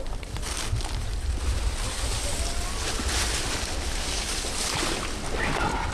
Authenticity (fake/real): real